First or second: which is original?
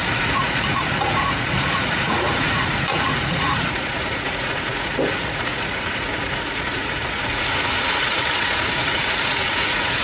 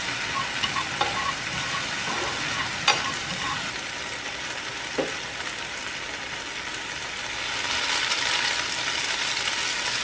second